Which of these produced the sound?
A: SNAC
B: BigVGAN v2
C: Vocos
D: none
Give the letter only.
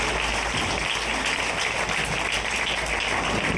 D